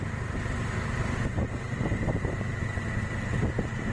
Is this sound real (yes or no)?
no